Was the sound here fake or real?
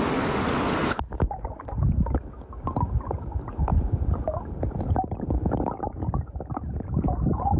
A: real